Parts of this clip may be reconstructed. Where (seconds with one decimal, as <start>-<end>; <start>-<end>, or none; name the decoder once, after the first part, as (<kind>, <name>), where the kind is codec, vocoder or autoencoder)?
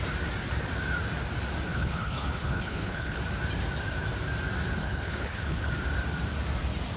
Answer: 1.7-3.2 (codec, HILCodec); 4.8-5.7